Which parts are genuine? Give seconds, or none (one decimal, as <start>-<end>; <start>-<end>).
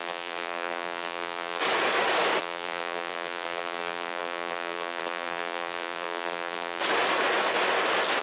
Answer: 1.6-2.4; 6.8-8.2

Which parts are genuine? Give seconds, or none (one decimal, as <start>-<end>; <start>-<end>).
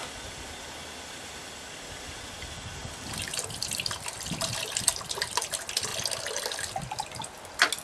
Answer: 0.0-2.8; 5.4-7.8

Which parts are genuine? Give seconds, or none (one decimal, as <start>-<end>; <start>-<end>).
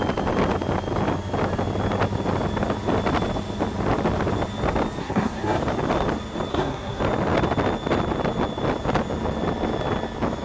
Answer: 0.0-5.0; 5.6-6.5; 7.0-10.4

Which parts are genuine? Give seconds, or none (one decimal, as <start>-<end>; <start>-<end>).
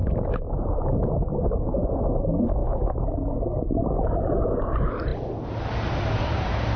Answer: 0.0-6.8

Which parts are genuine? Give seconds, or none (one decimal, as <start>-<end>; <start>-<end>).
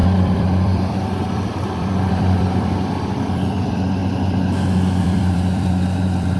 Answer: 4.0-5.0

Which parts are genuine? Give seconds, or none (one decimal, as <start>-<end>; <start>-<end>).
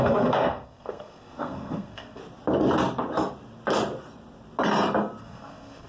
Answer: 2.2-5.2